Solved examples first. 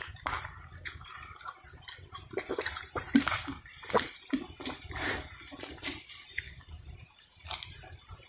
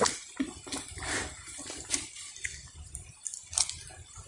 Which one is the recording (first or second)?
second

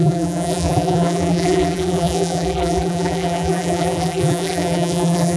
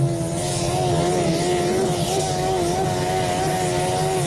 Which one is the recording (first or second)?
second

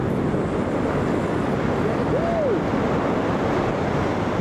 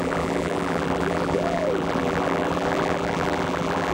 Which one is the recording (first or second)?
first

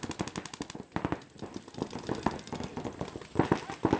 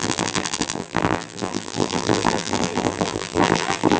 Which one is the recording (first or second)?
first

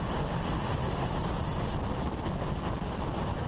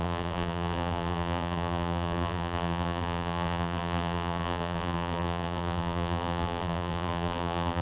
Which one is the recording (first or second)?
first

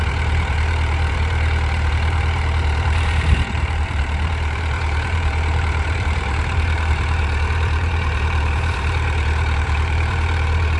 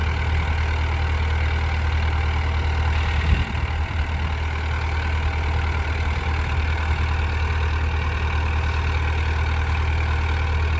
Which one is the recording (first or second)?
second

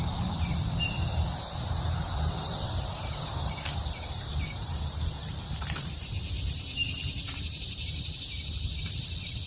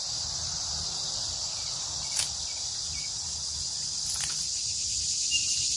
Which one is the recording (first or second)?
second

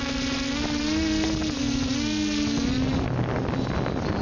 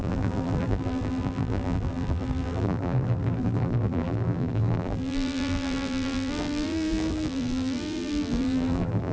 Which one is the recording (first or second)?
first